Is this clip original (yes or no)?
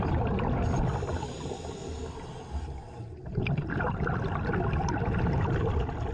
yes